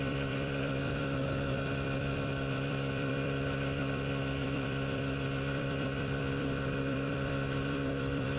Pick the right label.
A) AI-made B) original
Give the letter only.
A